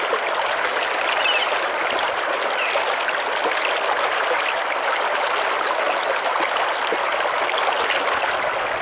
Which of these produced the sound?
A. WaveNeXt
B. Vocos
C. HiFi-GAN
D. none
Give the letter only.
D